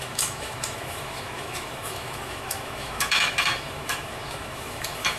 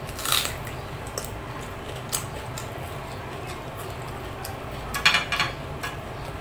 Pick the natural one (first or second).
second